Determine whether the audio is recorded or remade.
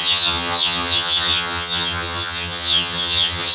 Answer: remade